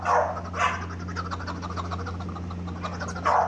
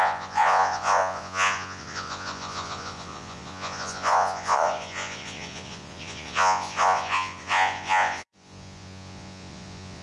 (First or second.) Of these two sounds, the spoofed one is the second